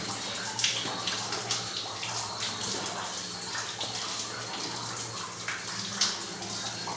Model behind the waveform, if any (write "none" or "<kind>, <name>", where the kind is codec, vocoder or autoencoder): none